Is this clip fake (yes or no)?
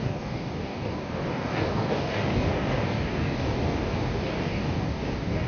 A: yes